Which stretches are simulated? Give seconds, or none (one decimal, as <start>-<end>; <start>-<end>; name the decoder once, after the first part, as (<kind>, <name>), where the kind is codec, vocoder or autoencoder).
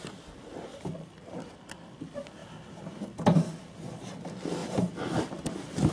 0.7-1.5 (vocoder, BigVGAN v2); 2.4-3.0; 4.6-5.5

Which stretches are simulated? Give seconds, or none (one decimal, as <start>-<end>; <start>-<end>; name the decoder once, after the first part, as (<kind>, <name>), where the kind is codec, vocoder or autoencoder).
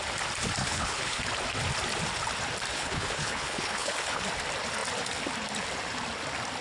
0.6-1.2 (codec, HILCodec); 2.7-4.2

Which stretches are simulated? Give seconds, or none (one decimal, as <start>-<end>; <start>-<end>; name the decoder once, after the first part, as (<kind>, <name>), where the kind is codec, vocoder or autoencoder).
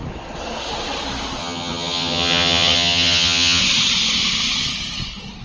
1.4-3.6 (vocoder, HiFi-GAN)